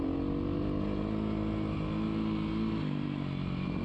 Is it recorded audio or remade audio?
recorded